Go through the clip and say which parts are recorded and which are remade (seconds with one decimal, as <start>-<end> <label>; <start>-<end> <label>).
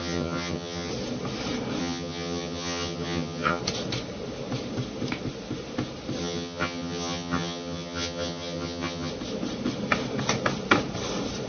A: 0.0-0.9 remade; 0.9-1.8 recorded; 1.8-3.6 remade; 3.6-6.2 recorded; 6.2-9.1 remade; 9.1-11.5 recorded